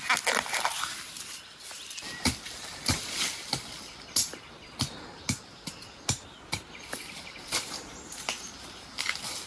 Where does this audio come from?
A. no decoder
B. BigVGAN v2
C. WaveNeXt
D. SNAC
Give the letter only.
A